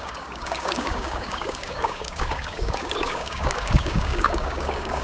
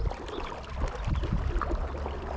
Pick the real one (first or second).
second